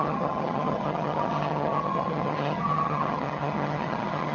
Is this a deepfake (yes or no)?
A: yes